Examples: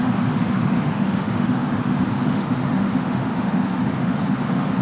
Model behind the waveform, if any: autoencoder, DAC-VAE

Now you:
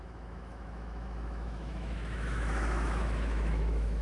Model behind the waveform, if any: autoencoder, DAC-VAE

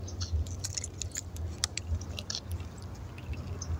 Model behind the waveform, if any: none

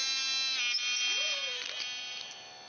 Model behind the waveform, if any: none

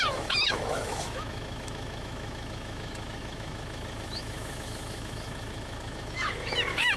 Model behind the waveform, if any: autoencoder, DAC-VAE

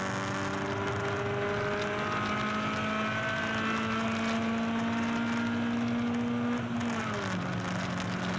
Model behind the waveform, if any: none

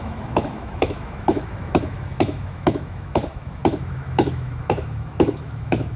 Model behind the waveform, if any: autoencoder, DAC-VAE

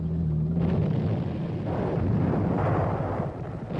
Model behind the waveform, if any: none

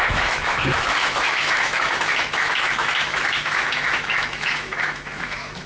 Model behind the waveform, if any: autoencoder, DAC-VAE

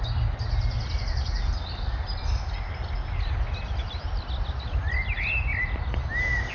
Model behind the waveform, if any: none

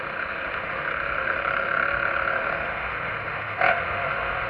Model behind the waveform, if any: autoencoder, DAC-VAE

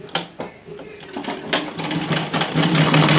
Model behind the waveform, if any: none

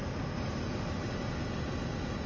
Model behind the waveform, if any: none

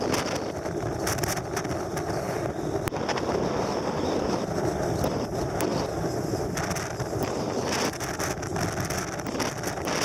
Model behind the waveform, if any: none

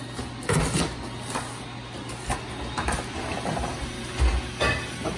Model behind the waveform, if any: none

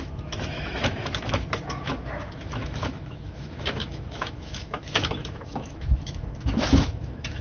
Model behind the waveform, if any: autoencoder, DAC-VAE